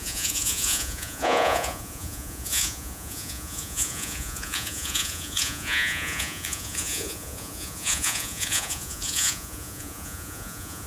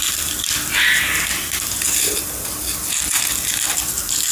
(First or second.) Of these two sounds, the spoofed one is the first